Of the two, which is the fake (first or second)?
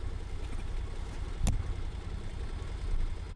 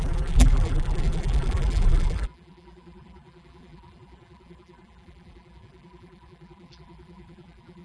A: second